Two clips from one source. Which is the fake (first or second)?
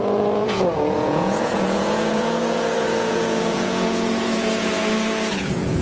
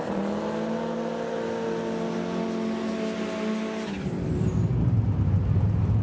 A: first